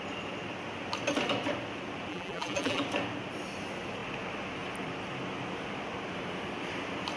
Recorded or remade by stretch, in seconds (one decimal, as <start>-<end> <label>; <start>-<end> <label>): 0.0-2.1 recorded; 2.1-2.8 remade; 2.8-7.2 recorded